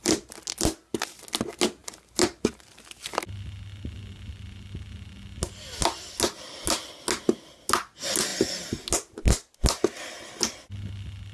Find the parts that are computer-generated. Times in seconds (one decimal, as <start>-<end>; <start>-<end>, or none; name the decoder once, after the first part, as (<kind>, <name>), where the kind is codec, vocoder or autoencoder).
1.8-2.8 (vocoder, BigVGAN v2)